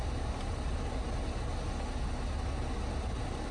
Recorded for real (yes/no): yes